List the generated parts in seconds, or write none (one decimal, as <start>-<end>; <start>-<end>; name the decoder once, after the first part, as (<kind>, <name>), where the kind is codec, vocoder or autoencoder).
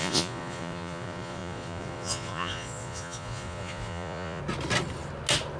0.0-4.4 (vocoder, Vocos)